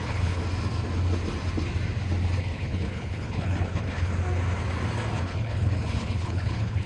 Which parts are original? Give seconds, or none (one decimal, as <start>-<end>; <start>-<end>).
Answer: 0.4-2.4; 4.1-5.2